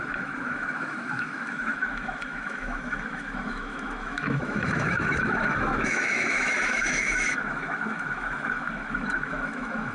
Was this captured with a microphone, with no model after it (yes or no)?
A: no